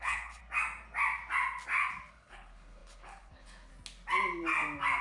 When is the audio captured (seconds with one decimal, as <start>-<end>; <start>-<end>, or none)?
0.4-2.1; 3.7-5.0